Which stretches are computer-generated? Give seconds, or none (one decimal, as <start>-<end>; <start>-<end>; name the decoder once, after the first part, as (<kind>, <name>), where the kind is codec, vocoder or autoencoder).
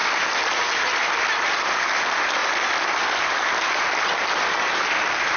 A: none